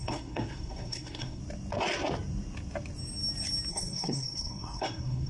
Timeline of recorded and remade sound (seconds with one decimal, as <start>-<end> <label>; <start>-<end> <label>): 0.0-1.4 remade; 1.4-3.7 recorded; 3.7-5.3 remade